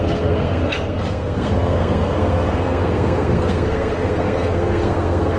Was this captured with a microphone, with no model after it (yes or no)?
no